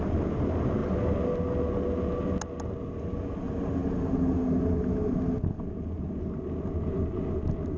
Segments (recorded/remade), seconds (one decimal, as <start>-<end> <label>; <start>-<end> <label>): 0.0-7.8 recorded